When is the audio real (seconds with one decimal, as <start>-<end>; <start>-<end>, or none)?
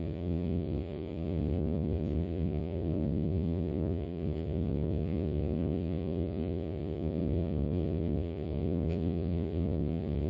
none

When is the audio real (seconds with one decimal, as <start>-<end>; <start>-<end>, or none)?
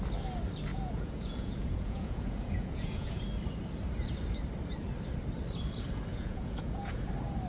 0.0-0.7; 3.2-6.1; 7.1-7.5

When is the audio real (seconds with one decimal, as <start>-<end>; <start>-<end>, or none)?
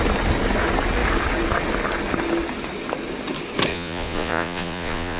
0.0-3.7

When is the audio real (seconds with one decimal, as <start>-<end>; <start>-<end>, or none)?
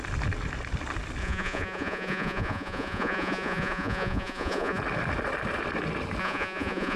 0.0-1.2; 4.8-6.2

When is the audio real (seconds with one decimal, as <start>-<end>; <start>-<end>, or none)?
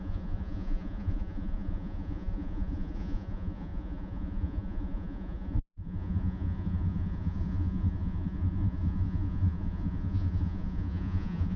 none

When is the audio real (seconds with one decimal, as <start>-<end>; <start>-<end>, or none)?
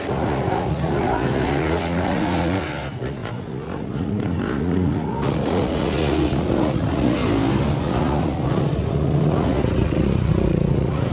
7.2-7.8